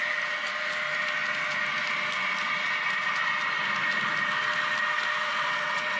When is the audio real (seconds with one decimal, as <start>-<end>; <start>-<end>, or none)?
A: 0.0-5.2